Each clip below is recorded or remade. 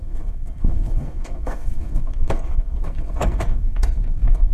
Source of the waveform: remade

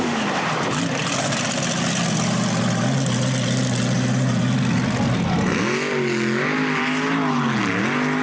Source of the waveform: recorded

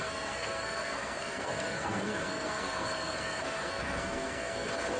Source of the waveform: remade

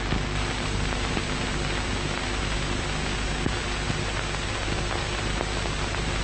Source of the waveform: recorded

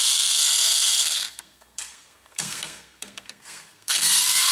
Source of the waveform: remade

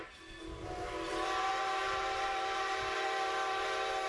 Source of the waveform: recorded